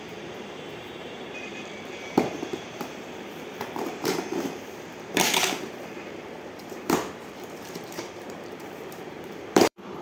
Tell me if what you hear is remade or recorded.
remade